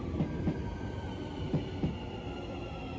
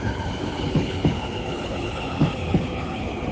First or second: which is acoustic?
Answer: first